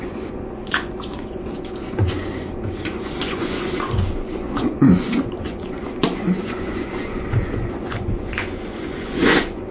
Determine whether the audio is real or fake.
fake